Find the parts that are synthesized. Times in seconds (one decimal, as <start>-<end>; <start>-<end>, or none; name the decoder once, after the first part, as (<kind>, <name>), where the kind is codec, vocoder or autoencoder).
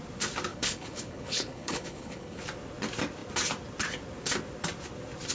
0.5-2.4 (codec, HILCodec)